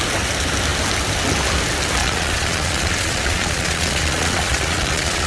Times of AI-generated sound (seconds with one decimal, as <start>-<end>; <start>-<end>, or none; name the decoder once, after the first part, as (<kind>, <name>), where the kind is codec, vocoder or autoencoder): 2.0-5.3 (vocoder, Vocos)

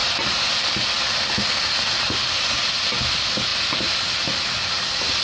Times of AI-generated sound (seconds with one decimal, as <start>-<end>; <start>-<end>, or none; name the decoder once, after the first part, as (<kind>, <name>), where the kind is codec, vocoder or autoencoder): none